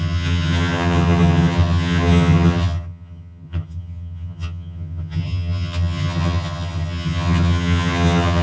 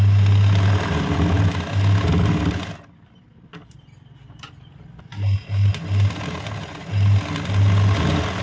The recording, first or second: second